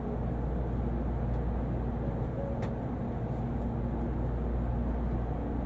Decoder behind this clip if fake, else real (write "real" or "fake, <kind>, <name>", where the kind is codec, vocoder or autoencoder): real